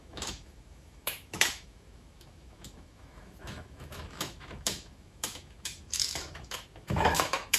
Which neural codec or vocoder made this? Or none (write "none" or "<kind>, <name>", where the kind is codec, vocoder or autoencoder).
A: autoencoder, DAC-VAE